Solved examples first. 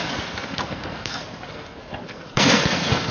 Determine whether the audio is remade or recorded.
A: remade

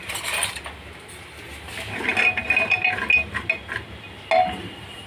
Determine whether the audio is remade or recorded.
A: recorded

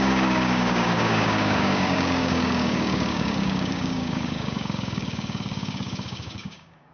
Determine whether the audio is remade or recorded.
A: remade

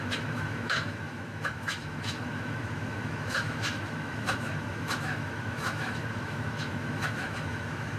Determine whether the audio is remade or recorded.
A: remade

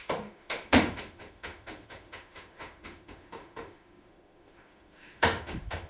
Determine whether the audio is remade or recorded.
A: remade